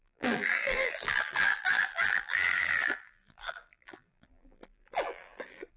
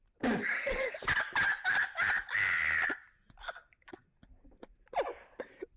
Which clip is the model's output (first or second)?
first